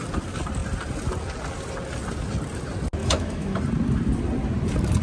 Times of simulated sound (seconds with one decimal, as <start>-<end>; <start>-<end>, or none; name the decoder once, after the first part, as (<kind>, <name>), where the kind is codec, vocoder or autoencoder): 3.0-3.6 (autoencoder, DAC-VAE)